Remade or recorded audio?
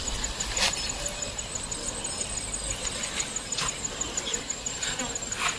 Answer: recorded